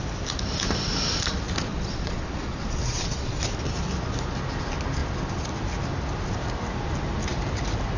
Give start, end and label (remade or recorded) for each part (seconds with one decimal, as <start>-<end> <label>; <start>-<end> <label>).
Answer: 0.0-1.7 recorded; 1.7-3.4 remade; 3.4-8.0 recorded